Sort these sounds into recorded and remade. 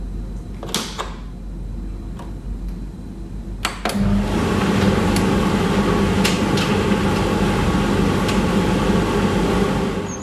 recorded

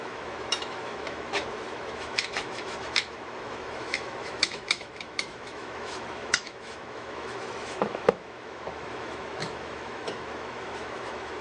remade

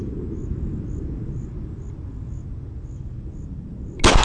recorded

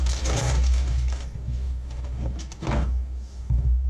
remade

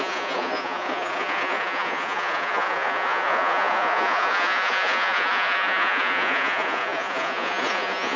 remade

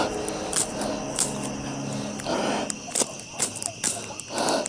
recorded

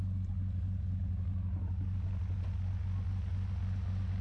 recorded